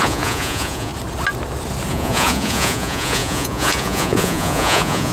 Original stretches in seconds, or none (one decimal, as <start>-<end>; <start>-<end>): 0.9-1.9